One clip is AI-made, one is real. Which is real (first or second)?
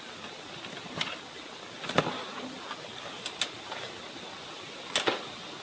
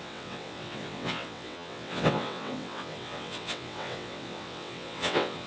first